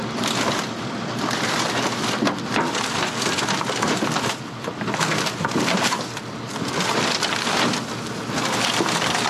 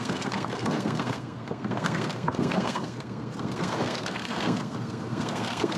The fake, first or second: second